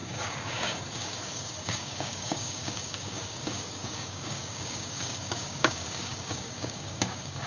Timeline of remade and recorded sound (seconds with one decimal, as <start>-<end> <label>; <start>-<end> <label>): 0.0-7.5 remade